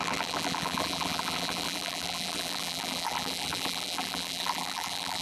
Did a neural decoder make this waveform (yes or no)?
yes